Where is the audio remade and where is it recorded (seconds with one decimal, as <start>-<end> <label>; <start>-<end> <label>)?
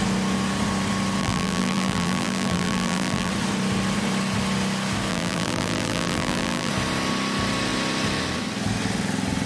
0.0-1.2 recorded; 1.2-3.3 remade; 3.3-5.1 recorded; 5.1-6.7 remade; 6.7-9.5 recorded